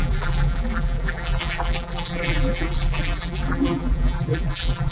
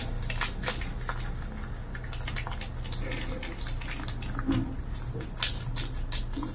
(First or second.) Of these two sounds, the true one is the second